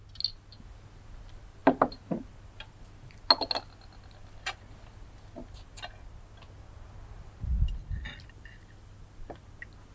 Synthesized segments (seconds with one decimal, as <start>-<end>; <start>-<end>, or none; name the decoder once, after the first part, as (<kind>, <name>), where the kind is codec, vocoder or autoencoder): none